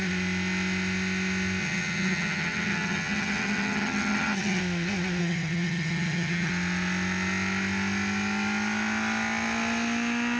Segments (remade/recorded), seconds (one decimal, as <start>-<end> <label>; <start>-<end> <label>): 0.0-1.6 recorded; 1.6-4.6 remade; 4.6-5.2 recorded; 5.2-6.5 remade; 6.5-10.4 recorded